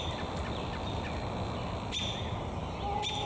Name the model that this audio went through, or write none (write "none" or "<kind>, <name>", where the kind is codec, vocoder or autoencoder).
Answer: none